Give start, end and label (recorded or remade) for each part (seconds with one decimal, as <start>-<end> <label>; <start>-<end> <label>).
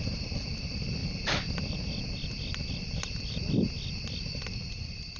0.0-5.2 recorded